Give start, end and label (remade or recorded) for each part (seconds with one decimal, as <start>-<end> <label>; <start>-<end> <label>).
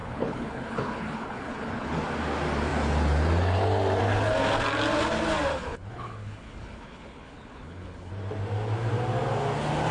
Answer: 0.0-2.0 remade; 2.0-5.5 recorded; 5.5-8.1 remade; 8.1-9.9 recorded